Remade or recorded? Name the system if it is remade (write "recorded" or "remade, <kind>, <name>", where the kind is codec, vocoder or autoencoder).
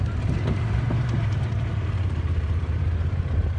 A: remade, vocoder, BigVGAN v2